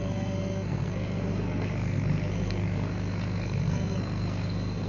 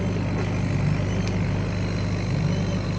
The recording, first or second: second